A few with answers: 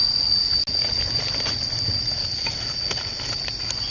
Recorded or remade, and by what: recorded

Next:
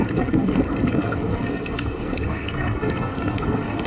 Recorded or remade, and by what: remade, codec, SNAC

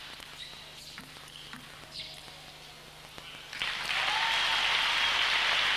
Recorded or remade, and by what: recorded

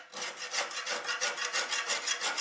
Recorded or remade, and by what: recorded